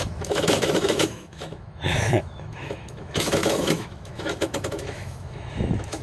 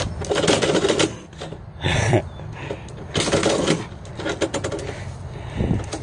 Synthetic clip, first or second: first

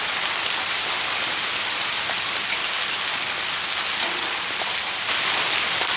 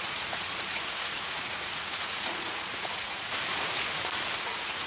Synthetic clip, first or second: second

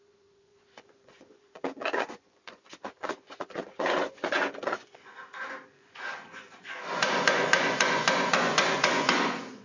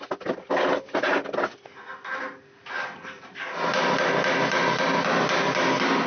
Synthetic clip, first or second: first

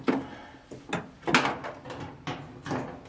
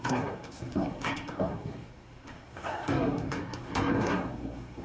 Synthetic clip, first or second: second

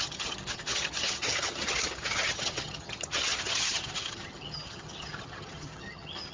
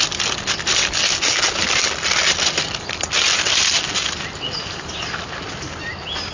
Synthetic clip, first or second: first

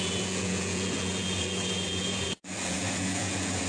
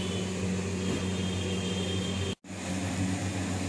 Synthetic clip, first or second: first